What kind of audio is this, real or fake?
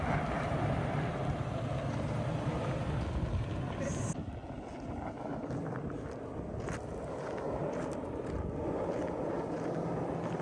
real